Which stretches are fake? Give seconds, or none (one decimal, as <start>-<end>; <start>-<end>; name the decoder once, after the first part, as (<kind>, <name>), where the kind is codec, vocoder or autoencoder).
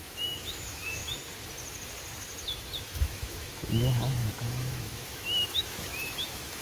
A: 0.0-1.0 (autoencoder, DAC-VAE); 2.8-6.6